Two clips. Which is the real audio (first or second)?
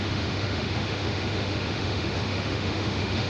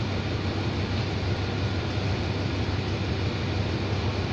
second